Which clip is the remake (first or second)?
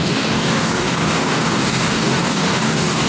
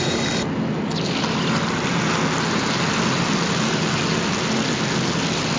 first